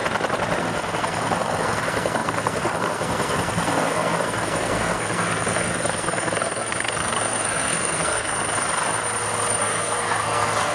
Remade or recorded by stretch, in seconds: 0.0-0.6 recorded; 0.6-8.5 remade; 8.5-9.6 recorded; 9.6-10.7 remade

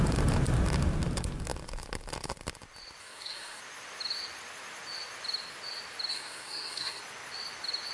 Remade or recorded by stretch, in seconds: 0.0-3.0 recorded; 3.0-3.6 remade; 3.6-6.1 recorded; 6.1-7.0 remade; 7.0-7.9 recorded